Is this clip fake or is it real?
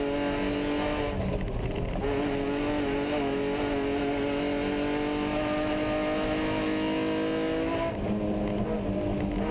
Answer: real